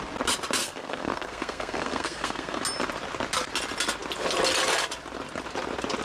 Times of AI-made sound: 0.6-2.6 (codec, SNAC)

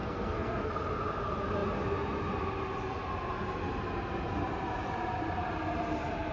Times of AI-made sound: 0.0-0.7 (codec, SNAC)

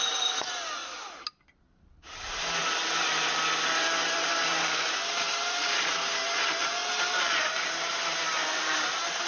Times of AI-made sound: 0.0-0.8 (vocoder, BigVGAN v2); 1.7-2.6; 3.3-6.8; 7.4-9.3

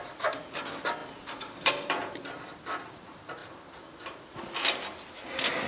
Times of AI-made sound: none

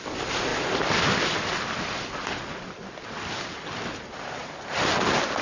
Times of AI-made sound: none